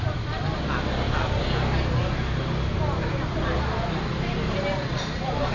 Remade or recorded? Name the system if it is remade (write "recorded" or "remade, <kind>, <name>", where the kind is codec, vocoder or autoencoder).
recorded